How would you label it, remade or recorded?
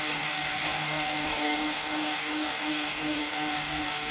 remade